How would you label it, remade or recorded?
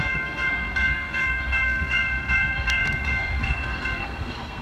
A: remade